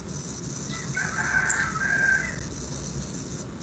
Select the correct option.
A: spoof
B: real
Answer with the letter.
B